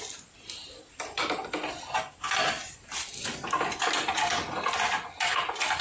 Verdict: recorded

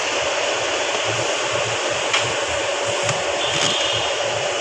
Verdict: recorded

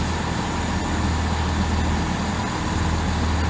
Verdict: recorded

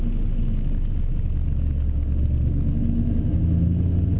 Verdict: recorded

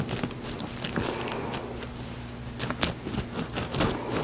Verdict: recorded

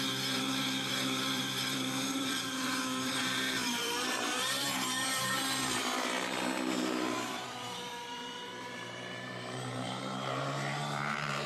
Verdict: remade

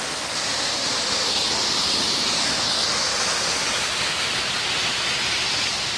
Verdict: recorded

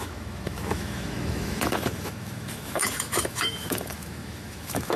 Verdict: remade